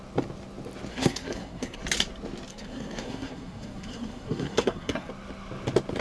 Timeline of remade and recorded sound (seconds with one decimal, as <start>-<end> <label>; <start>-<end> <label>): 0.0-0.9 recorded; 0.9-1.8 remade; 1.8-2.5 recorded; 2.5-5.1 remade; 5.1-6.0 recorded